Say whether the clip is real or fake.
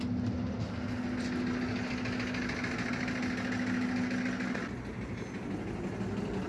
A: real